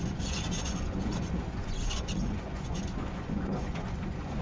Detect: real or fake fake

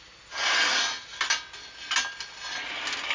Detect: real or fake real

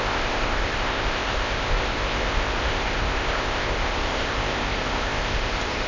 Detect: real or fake fake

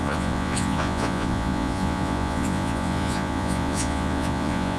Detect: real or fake fake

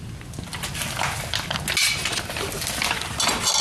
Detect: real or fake real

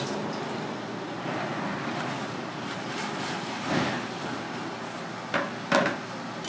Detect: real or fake real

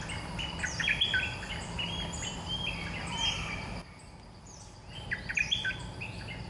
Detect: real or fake fake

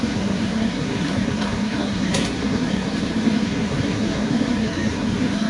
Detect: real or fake fake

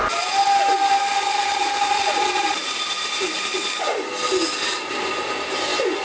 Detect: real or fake real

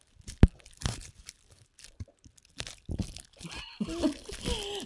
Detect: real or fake real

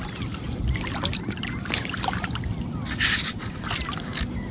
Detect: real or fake real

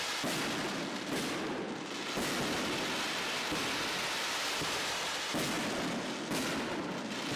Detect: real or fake real